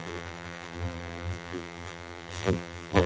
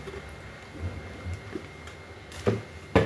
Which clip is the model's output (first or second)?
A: first